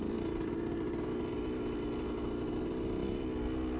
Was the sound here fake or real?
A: real